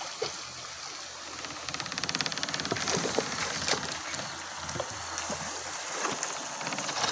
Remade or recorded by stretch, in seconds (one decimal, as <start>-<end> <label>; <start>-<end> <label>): 0.0-7.1 recorded